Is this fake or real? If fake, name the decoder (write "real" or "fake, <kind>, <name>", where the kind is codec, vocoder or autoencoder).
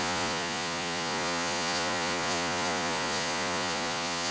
fake, vocoder, Vocos